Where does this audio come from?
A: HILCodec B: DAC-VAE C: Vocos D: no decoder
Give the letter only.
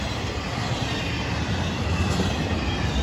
D